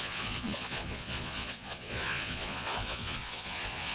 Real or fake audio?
fake